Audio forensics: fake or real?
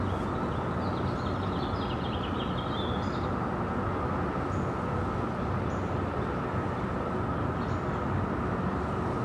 real